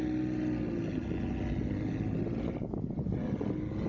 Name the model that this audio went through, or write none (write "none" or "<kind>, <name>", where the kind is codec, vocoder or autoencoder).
none